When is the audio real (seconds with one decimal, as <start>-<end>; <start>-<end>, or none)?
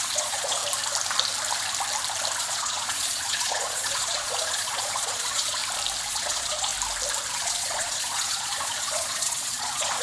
0.6-2.4; 5.6-6.1; 6.7-7.3